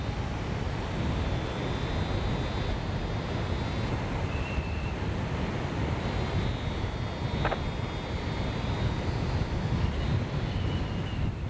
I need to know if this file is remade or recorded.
recorded